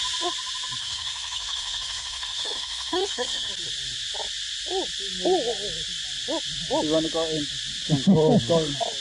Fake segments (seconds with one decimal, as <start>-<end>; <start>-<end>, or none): 0.8-3.5